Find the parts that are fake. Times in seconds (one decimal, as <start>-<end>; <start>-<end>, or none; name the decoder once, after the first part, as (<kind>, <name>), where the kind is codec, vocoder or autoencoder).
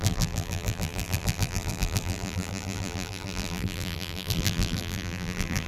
0.0-5.7 (vocoder, BigVGAN v2)